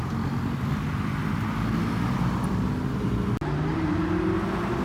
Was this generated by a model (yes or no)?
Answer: no